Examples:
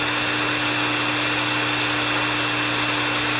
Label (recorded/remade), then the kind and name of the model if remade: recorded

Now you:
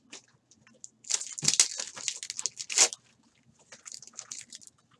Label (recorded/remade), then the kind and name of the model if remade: recorded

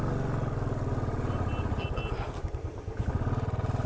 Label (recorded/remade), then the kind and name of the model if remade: recorded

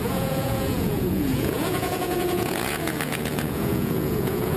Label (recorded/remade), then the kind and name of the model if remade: remade, vocoder, Vocos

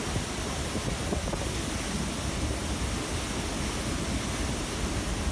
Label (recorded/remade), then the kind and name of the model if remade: recorded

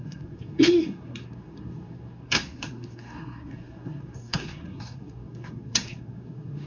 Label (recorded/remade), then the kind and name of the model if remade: remade, codec, SNAC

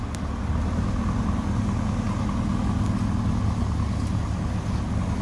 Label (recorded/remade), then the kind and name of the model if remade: recorded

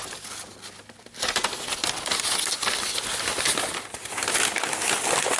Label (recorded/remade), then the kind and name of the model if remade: recorded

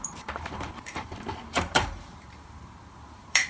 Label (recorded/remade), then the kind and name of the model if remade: remade, vocoder, BigVGAN v2